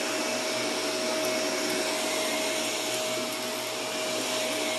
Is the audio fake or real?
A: real